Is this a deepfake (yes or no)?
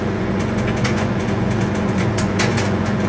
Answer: yes